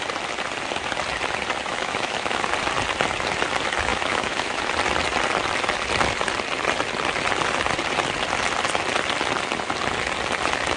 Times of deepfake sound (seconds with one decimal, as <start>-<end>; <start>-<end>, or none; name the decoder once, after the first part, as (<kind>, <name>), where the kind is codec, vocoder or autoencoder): 1.7-2.5 (autoencoder, DAC-VAE); 3.9-4.6